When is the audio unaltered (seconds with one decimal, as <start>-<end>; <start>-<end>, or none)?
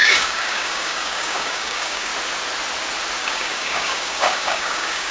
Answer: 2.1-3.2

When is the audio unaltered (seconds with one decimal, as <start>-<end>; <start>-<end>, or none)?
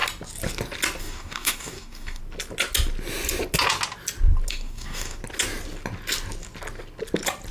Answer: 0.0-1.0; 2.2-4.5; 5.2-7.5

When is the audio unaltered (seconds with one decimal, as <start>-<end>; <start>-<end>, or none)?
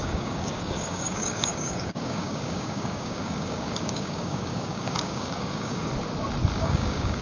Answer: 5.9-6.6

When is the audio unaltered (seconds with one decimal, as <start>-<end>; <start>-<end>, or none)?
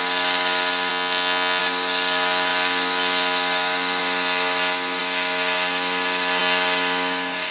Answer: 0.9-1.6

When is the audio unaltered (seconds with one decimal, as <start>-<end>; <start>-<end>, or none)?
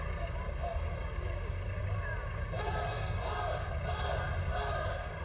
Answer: none